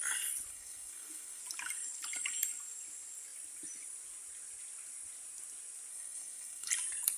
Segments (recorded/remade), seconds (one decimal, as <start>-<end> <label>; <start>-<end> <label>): 0.0-0.5 recorded; 0.5-1.4 remade; 1.4-5.9 recorded; 5.9-6.7 remade; 6.7-7.2 recorded